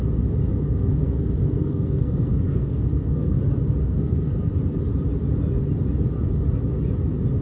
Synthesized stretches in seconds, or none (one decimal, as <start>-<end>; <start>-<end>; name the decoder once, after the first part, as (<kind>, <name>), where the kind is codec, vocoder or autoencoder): 0.5-3.4 (codec, SNAC); 3.8-4.5

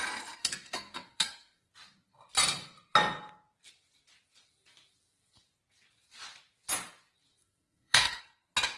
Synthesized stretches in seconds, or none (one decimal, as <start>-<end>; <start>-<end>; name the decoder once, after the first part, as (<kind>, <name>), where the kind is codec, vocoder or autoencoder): 0.4-1.7 (codec, SNAC); 7.4-8.2